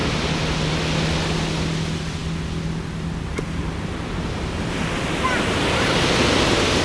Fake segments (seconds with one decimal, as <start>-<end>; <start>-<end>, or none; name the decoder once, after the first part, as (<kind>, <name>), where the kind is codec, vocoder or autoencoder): none